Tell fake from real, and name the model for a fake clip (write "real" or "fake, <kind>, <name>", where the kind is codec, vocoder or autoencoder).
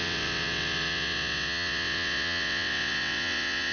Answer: fake, vocoder, WaveNeXt